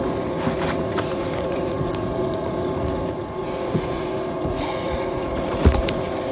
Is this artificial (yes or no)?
yes